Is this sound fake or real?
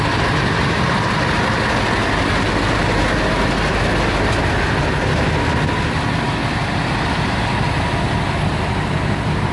real